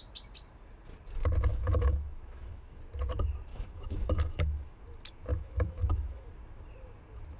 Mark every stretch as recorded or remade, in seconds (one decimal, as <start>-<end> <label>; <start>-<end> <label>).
0.0-1.5 recorded; 1.5-2.8 remade; 2.8-3.5 recorded; 3.5-4.8 remade; 4.8-5.3 recorded; 5.3-6.3 remade; 6.3-7.4 recorded